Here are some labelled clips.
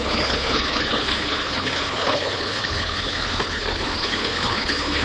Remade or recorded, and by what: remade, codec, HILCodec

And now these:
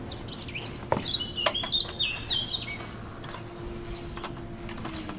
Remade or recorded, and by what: recorded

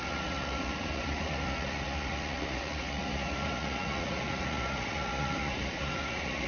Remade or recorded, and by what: remade, vocoder, Vocos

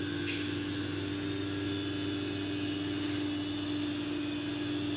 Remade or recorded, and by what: recorded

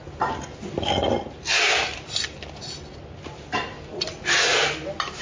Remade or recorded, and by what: recorded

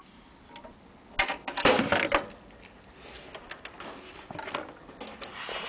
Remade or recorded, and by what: recorded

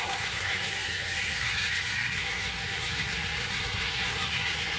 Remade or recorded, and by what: remade, codec, SNAC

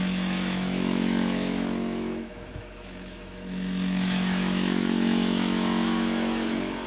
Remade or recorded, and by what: remade, autoencoder, DAC-VAE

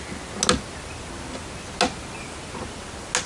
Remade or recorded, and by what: recorded